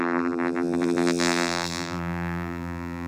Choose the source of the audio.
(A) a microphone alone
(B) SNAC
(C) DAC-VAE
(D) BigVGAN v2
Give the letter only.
D